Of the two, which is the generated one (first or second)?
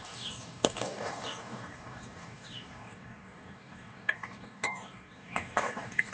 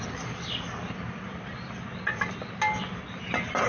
first